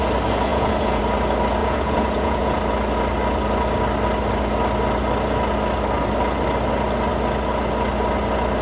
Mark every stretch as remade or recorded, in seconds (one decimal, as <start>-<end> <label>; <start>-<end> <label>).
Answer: 0.0-0.5 recorded; 0.5-1.0 remade; 1.0-1.6 recorded; 1.6-2.6 remade; 2.6-8.6 recorded